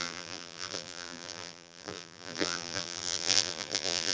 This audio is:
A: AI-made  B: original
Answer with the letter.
A